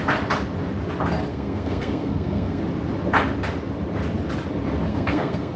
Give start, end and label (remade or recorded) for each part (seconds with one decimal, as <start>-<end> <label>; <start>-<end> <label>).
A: 0.0-1.3 recorded; 1.3-2.6 remade; 2.6-4.9 recorded; 4.9-5.6 remade